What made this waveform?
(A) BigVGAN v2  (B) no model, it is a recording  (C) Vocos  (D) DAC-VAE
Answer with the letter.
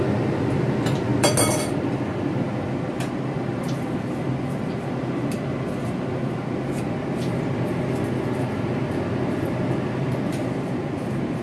B